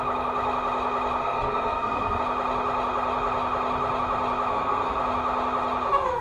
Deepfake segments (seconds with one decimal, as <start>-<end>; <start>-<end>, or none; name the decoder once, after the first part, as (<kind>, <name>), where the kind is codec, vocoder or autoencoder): 1.2-2.2 (codec, SNAC); 4.5-5.0